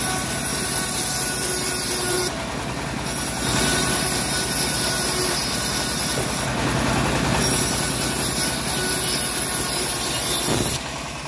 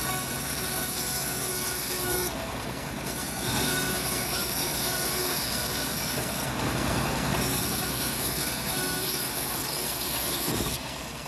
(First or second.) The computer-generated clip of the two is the second